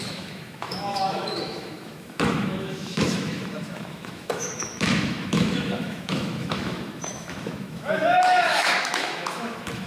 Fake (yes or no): yes